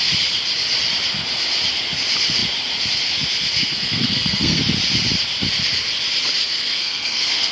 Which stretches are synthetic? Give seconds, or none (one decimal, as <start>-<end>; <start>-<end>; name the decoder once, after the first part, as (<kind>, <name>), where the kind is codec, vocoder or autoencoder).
3.6-4.6 (codec, SNAC); 6.4-7.5